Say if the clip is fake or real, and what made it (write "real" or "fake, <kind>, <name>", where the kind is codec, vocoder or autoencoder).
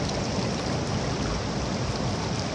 real